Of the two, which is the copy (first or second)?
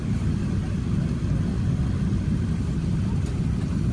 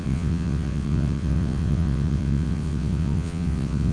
second